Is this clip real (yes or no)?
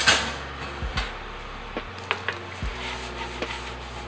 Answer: yes